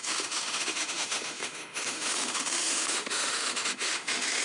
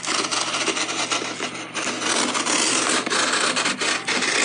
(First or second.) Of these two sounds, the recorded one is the second